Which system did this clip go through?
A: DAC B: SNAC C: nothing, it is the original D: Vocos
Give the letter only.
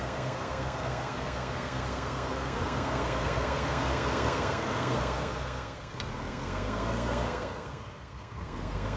B